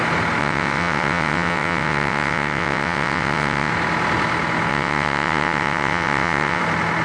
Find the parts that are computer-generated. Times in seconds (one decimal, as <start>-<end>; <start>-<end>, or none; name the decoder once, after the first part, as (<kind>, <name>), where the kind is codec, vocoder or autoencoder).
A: 0.4-3.7 (vocoder, WaveNeXt); 4.7-6.6